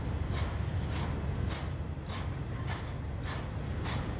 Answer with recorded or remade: recorded